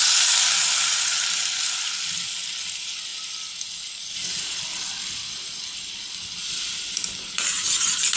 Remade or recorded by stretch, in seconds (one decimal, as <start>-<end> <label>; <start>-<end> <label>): 0.0-8.2 recorded